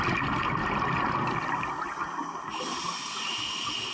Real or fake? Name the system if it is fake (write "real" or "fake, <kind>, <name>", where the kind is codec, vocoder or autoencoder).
real